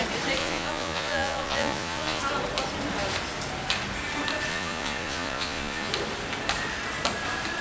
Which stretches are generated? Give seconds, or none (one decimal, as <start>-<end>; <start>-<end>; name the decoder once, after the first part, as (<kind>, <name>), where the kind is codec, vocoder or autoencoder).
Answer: 0.4-2.2 (vocoder, Vocos); 4.5-5.9